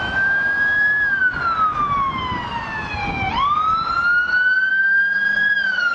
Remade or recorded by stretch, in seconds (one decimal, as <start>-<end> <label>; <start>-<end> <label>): 0.0-1.2 remade; 1.2-4.7 recorded; 4.7-5.9 remade